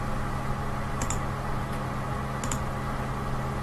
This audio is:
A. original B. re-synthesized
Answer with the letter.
A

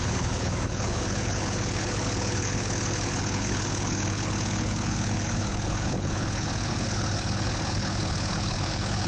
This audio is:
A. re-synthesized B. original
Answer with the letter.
A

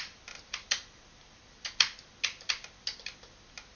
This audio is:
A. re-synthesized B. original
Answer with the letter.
B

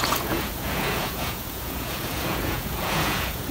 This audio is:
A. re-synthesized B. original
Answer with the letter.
A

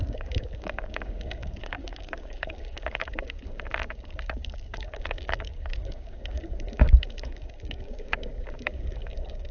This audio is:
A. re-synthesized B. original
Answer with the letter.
A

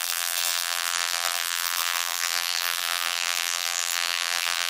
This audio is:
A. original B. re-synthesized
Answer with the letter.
B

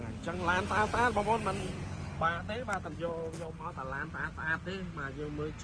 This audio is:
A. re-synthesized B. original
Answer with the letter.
B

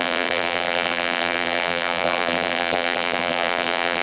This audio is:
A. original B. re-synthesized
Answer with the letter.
B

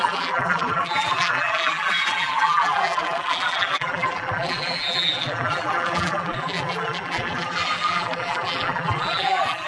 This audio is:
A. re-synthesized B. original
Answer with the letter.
A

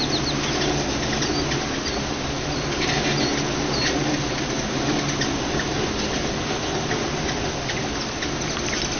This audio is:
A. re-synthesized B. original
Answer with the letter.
B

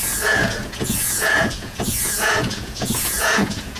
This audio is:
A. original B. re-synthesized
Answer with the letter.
B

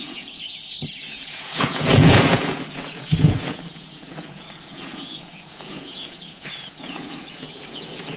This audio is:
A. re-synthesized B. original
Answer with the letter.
A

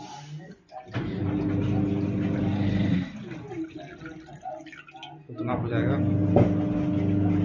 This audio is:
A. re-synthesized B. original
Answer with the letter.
B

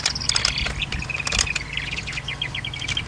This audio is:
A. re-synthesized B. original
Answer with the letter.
B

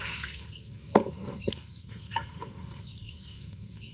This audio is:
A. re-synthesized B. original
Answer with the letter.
A